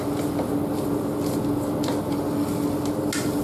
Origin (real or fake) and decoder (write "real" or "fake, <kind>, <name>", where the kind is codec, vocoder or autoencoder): real